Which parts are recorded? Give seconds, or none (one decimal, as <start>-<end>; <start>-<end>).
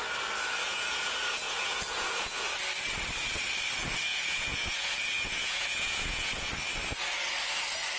0.0-0.6; 2.4-4.1; 6.5-8.0